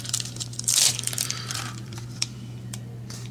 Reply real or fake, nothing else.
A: fake